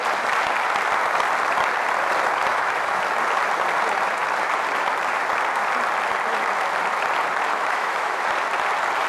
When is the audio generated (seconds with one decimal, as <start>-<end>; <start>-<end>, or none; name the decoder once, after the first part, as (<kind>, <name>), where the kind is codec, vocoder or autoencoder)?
2.5-3.0 (autoencoder, DAC-VAE); 7.5-8.2